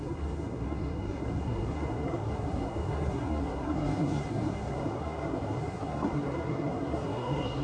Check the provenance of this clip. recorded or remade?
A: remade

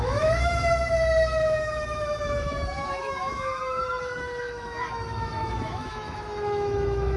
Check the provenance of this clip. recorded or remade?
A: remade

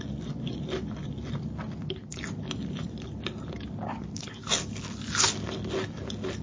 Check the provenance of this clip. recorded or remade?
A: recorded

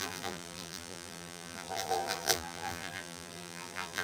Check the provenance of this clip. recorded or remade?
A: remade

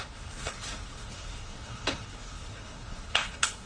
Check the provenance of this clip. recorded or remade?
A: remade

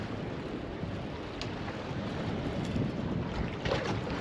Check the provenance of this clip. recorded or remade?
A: recorded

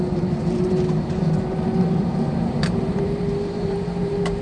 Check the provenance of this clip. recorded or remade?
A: remade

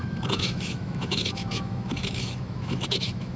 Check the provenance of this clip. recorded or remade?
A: remade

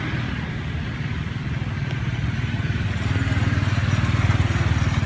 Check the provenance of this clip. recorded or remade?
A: recorded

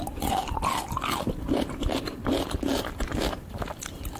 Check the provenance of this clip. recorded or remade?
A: recorded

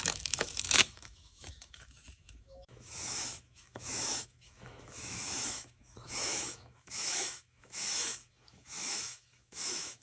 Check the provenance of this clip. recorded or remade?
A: remade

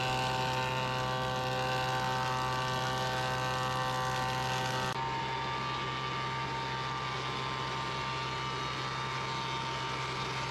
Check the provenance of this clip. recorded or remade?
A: recorded